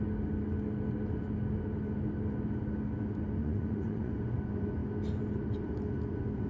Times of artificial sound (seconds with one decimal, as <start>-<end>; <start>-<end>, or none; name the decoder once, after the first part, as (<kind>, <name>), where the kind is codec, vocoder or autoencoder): 3.4-4.1 (vocoder, Vocos)